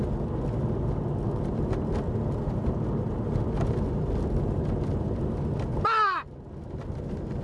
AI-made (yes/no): no